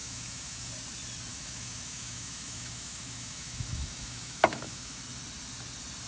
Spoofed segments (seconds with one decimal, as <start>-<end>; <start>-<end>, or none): 0.0-0.7; 1.3-5.0